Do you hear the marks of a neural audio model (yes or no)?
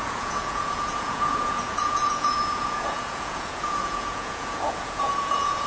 yes